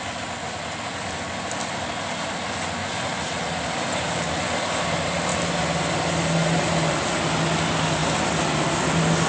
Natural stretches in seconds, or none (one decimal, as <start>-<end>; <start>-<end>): 0.0-0.4; 1.0-2.8; 3.6-9.3